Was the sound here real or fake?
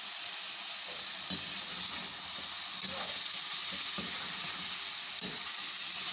real